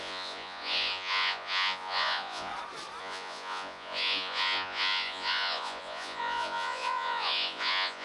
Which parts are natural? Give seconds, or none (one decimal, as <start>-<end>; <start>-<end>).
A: 2.5-3.0